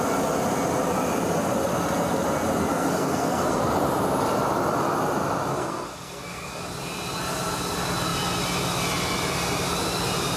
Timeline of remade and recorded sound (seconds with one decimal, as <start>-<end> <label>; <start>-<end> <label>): 0.0-2.7 recorded; 2.7-3.6 remade; 3.6-5.5 recorded; 5.5-6.6 remade; 6.6-10.4 recorded